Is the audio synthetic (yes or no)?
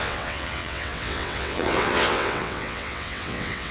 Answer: yes